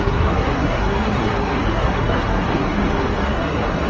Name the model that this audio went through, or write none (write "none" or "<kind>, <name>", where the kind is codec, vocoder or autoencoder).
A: codec, SNAC